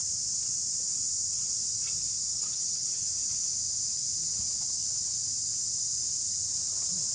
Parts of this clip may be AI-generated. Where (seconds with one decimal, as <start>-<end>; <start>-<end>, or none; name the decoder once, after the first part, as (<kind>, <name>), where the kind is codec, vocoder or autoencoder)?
2.3-3.1 (vocoder, HiFi-GAN)